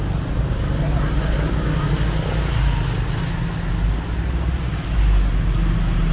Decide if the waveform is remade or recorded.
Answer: recorded